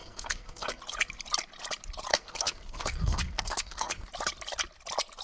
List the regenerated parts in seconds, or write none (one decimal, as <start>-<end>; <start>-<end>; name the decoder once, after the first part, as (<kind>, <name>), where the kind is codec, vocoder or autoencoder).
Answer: 0.0-0.8 (codec, SNAC); 2.1-4.1